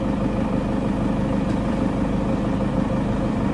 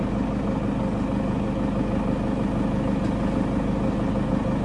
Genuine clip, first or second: second